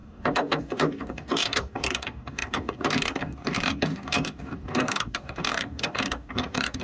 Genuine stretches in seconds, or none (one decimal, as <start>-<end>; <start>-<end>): none